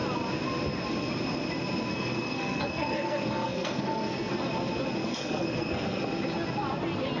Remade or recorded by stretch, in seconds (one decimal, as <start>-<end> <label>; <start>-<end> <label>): 0.0-1.9 recorded; 1.9-4.3 remade; 4.3-5.0 recorded; 5.0-6.0 remade; 6.0-7.2 recorded